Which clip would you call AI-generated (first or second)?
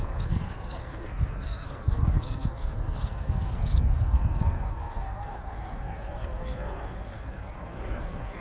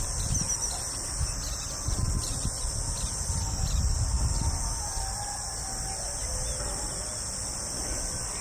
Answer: first